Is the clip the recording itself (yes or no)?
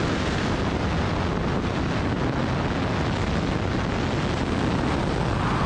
yes